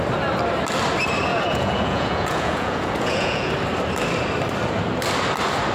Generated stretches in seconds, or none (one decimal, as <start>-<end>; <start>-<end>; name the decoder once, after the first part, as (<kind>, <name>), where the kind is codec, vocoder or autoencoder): 1.3-3.5 (vocoder, Vocos)